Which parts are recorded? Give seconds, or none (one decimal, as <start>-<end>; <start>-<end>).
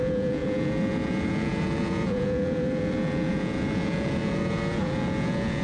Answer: none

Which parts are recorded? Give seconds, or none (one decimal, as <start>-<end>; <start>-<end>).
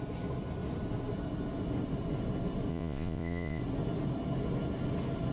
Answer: 0.0-2.7; 3.6-5.3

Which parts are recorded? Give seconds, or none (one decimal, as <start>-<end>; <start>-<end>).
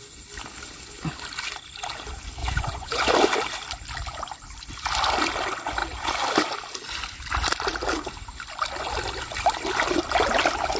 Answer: 0.0-2.4; 3.1-10.8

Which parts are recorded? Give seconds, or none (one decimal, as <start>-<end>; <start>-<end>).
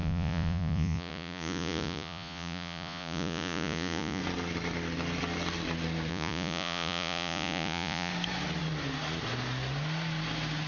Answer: 4.2-6.1; 8.1-10.7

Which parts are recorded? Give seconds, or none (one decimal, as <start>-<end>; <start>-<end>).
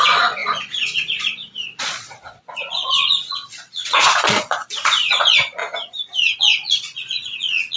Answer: 5.6-6.4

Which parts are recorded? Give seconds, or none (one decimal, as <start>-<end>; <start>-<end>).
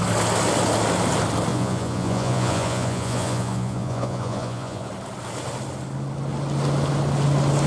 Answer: 0.0-1.5; 4.9-7.7